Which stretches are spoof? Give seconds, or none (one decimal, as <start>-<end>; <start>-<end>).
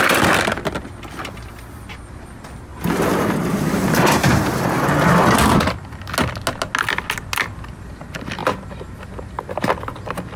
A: 2.7-4.5